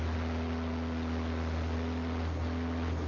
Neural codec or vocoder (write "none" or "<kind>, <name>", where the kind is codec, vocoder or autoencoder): none